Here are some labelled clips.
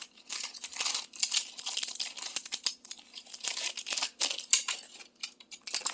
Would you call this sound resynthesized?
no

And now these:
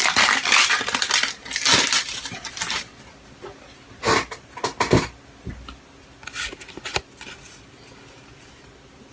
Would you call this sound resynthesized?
no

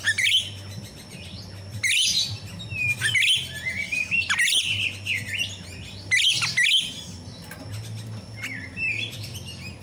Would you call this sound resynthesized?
no